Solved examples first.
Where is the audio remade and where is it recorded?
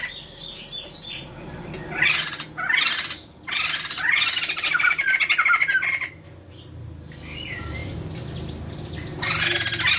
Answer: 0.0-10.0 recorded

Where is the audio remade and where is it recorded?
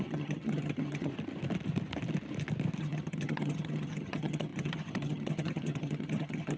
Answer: 0.0-1.1 remade; 1.1-2.8 recorded; 2.8-6.6 remade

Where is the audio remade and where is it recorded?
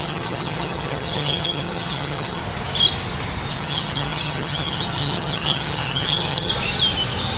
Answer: 0.0-2.4 remade; 2.4-3.5 recorded; 3.5-6.5 remade; 6.5-7.4 recorded